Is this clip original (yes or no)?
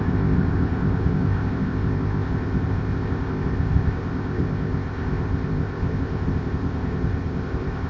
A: no